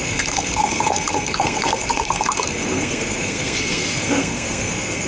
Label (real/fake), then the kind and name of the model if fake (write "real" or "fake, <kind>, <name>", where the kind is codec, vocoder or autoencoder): fake, codec, SNAC